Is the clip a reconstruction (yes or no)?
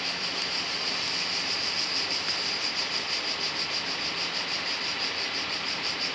no